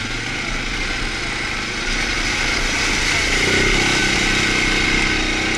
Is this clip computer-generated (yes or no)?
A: no